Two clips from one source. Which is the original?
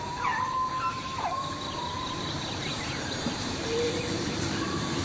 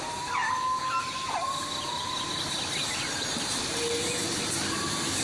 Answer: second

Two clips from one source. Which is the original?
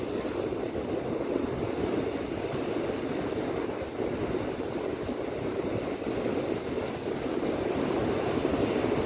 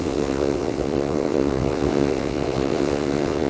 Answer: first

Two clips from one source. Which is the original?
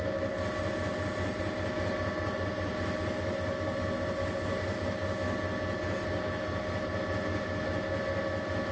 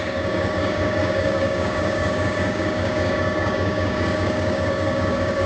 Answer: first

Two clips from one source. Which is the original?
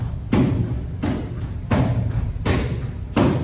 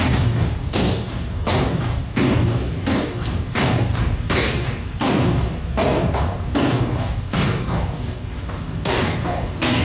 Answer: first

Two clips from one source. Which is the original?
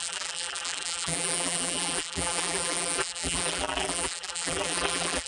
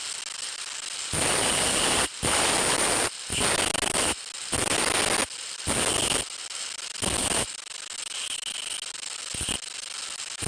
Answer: second